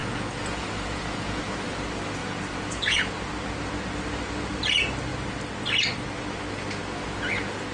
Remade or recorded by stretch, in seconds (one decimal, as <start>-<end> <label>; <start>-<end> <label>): 0.0-1.4 remade; 1.4-2.2 recorded; 2.2-3.1 remade; 3.1-7.7 recorded